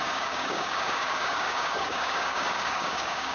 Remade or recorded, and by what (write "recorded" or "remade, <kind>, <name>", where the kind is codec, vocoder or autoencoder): remade, codec, DAC